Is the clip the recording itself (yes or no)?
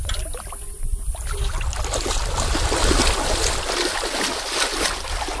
yes